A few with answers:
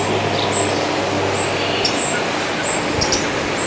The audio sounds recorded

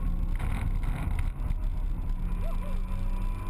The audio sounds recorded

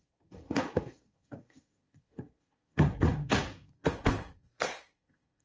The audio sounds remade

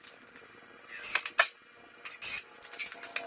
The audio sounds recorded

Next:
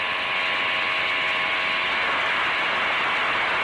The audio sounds recorded